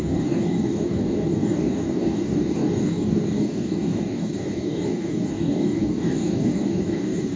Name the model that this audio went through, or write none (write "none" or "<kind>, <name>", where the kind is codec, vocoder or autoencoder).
codec, DAC